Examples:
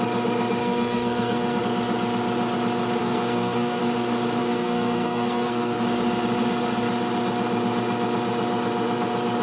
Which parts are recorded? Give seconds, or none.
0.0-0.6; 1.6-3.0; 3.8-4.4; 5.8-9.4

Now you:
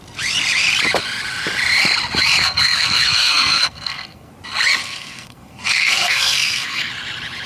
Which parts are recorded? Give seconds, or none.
0.0-2.4; 4.3-4.8; 6.9-7.5

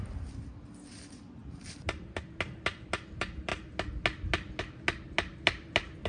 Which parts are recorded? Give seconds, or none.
0.0-6.1

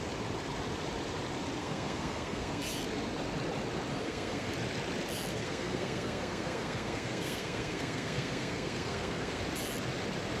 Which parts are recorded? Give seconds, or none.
0.0-1.6; 2.6-3.9; 4.5-5.3; 9.4-10.4